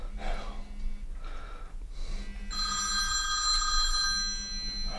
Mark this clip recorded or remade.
recorded